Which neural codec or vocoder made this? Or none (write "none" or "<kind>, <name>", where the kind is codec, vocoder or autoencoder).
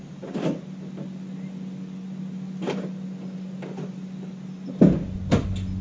none